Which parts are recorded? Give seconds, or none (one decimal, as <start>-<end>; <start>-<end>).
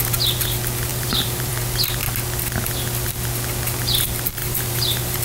0.0-0.9; 1.5-4.4